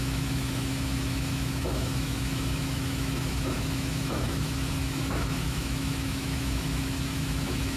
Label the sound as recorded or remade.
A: remade